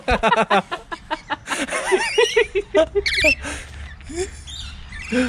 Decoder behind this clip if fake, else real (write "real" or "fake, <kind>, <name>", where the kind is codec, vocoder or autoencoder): real